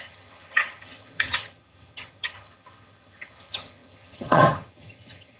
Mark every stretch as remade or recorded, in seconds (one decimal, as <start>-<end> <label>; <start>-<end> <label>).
0.0-5.4 remade